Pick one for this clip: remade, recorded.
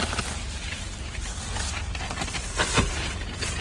recorded